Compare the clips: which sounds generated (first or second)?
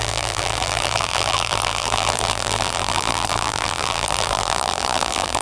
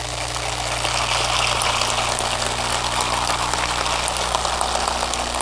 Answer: first